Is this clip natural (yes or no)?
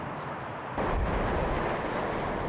yes